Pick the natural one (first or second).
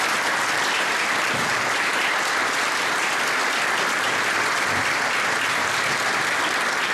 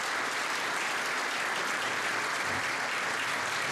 second